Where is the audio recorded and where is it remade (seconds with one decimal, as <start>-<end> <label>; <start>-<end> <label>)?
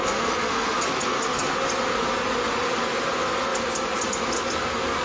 0.0-1.5 remade; 1.5-5.0 recorded